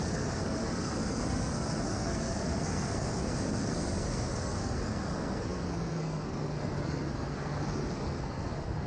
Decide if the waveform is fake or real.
fake